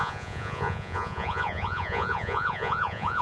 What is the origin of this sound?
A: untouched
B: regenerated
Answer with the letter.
B